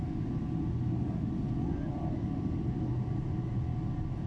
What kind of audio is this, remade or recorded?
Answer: recorded